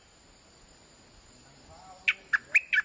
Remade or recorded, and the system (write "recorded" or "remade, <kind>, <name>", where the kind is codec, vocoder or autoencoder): recorded